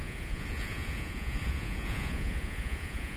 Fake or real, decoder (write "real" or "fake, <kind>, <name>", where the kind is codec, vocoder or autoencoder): fake, vocoder, Vocos